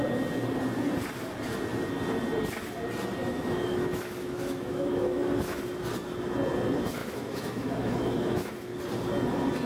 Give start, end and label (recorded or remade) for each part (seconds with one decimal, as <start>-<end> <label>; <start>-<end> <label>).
0.0-3.2 recorded; 3.2-5.6 remade; 5.6-7.0 recorded; 7.0-8.5 remade; 8.5-9.7 recorded